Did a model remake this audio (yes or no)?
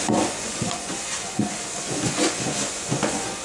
yes